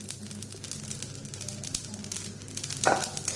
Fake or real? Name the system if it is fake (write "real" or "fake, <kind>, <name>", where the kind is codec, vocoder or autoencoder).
real